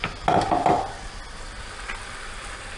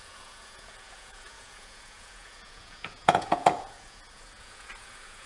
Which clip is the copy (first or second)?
second